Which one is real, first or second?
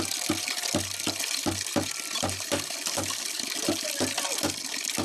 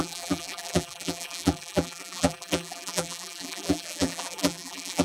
first